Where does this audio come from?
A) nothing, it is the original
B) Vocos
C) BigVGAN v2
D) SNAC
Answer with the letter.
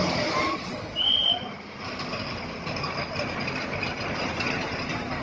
A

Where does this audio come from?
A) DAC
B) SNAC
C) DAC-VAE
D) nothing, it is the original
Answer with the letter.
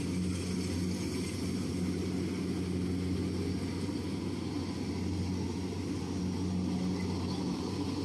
D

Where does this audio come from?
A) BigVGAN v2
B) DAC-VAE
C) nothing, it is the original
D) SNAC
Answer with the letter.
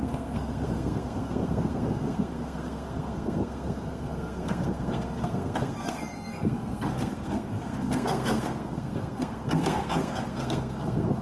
D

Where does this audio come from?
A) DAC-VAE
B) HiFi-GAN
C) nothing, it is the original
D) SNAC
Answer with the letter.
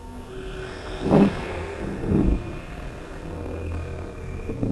D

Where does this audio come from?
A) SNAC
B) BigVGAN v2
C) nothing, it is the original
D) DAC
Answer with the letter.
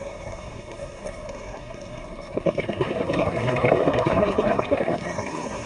A